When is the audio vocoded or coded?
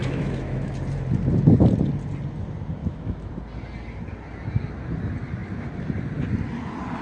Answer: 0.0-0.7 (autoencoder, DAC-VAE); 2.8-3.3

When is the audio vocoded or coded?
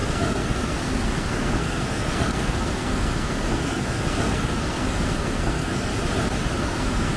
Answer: 0.0-5.9 (codec, SNAC); 6.6-7.2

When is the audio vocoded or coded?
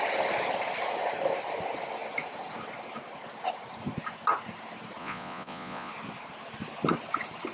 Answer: 5.0-5.9 (vocoder, Vocos)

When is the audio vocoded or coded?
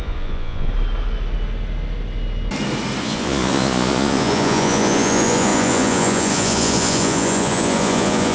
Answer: 0.0-0.7 (vocoder, Vocos); 3.0-8.3